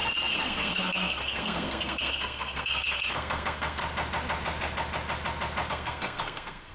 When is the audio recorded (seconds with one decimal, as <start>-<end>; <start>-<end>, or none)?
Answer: 3.8-5.7